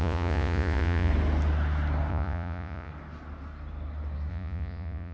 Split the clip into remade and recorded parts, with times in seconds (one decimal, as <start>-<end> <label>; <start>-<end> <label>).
0.0-1.1 remade; 1.1-2.1 recorded; 2.1-2.9 remade; 2.9-4.3 recorded; 4.3-5.1 remade